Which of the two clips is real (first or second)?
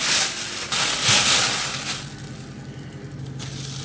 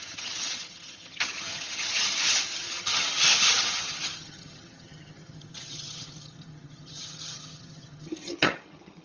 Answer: first